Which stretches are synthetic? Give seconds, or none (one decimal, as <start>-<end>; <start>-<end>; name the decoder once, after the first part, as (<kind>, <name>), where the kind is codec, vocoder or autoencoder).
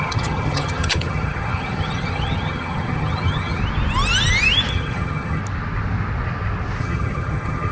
0.0-3.6 (vocoder, HiFi-GAN); 4.7-5.4; 6.8-7.7